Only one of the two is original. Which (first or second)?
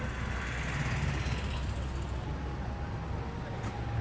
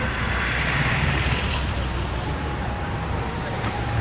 first